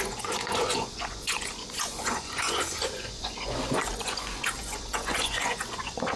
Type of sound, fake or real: fake